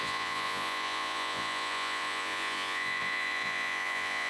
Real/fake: fake